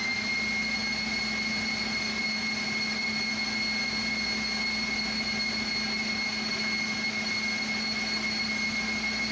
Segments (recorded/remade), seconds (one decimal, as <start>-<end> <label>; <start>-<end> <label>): 0.0-9.3 recorded

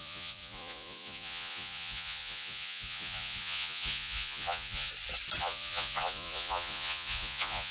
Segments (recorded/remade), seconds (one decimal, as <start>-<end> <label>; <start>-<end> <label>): 0.0-4.9 remade; 4.9-5.4 recorded; 5.4-7.7 remade

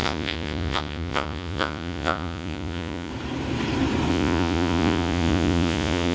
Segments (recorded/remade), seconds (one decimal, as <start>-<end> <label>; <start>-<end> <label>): 0.0-3.1 remade; 3.1-4.1 recorded; 4.1-6.1 remade

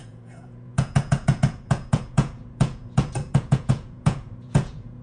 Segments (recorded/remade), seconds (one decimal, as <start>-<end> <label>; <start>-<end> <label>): 0.0-5.0 remade

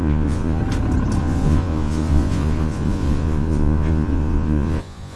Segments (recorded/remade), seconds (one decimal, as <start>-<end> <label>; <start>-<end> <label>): 0.0-0.6 remade; 0.6-1.2 recorded; 1.2-5.2 remade